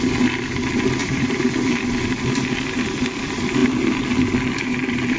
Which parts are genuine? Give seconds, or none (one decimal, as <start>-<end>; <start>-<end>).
0.0-1.0; 1.5-5.2